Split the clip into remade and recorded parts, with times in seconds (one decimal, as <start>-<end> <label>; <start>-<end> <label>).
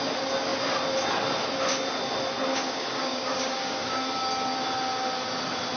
0.0-2.5 recorded; 2.5-4.0 remade; 4.0-5.8 recorded